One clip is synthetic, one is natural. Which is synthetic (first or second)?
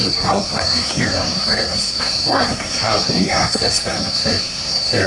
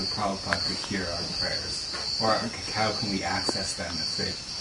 first